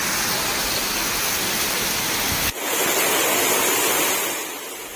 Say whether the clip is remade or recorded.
recorded